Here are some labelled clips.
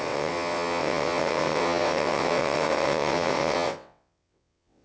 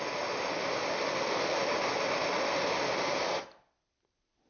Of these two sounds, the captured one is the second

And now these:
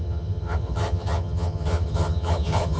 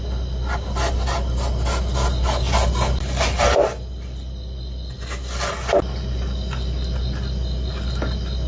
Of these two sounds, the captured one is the second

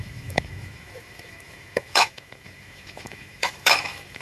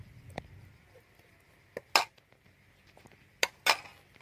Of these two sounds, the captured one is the second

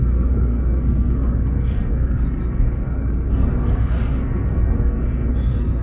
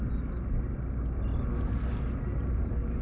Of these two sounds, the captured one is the second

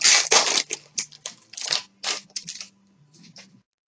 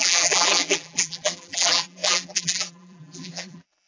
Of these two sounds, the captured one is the first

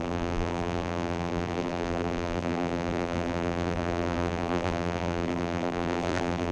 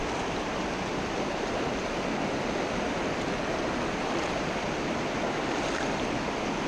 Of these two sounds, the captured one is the second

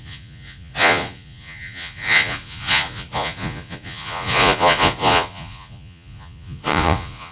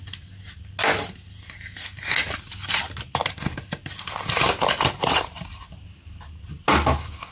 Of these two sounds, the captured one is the second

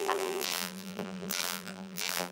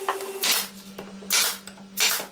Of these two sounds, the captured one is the second